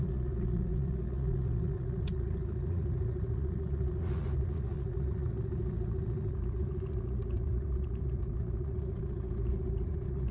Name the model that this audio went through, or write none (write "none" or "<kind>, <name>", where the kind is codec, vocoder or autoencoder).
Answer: vocoder, Vocos